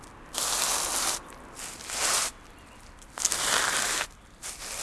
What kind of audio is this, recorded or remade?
recorded